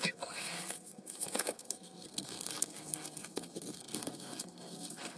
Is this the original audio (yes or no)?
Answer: no